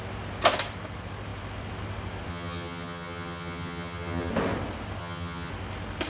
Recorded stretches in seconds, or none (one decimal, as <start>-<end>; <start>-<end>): 0.0-2.3; 4.3-5.0; 5.5-6.1